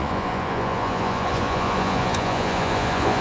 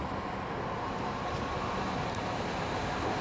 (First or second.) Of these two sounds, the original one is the second